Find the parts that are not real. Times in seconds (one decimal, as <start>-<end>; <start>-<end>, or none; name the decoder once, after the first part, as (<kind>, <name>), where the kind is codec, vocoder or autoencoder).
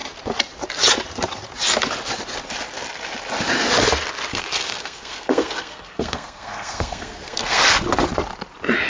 4.3-7.6 (codec, SNAC)